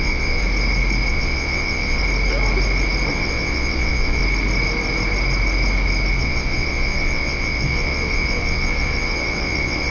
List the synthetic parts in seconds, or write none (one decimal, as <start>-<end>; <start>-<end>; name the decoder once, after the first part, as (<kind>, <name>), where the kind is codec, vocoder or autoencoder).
0.0-0.4 (vocoder, WaveNeXt); 1.1-2.0; 3.1-4.2; 6.2-9.9